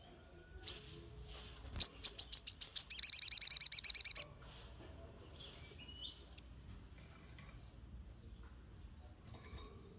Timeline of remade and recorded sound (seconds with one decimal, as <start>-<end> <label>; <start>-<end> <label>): 0.0-10.0 recorded